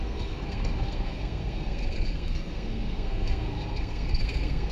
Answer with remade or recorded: remade